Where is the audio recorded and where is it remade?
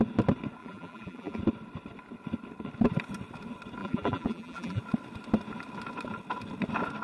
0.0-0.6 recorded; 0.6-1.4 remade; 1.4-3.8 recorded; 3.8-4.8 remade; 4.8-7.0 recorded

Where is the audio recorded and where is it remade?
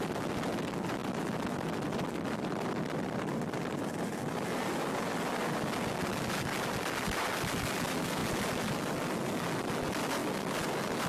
0.0-11.1 recorded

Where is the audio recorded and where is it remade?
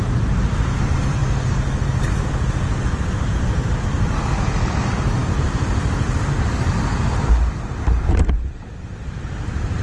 0.0-1.2 remade; 1.2-3.1 recorded; 3.1-9.8 remade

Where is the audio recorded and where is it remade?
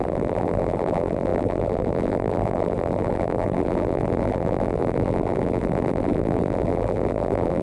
0.0-7.6 remade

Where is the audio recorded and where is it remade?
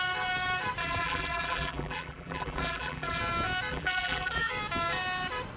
0.0-0.8 recorded; 0.8-3.2 remade; 3.2-3.7 recorded; 3.7-4.5 remade; 4.5-5.6 recorded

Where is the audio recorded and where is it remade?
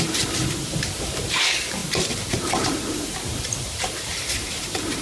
0.0-1.8 remade; 1.8-2.5 recorded; 2.5-5.0 remade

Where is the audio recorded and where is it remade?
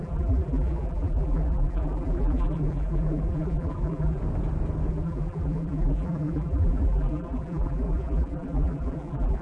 0.0-4.2 remade; 4.2-4.9 recorded; 4.9-9.4 remade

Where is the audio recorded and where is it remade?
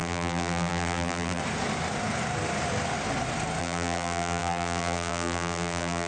0.0-1.4 remade; 1.4-3.6 recorded; 3.6-6.1 remade